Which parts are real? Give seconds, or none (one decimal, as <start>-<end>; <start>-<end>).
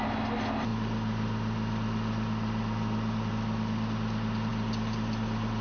0.0-5.6